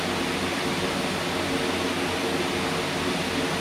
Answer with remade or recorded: recorded